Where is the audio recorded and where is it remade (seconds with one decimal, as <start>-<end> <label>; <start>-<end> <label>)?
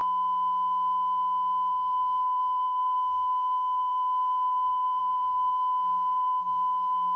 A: 0.0-1.7 recorded; 1.7-7.2 remade